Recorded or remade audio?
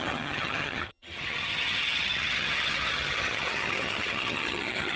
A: remade